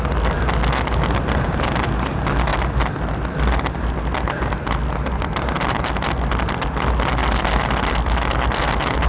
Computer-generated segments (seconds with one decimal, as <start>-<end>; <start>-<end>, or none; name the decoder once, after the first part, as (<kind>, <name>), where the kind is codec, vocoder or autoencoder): none